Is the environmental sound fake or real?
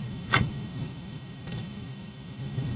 fake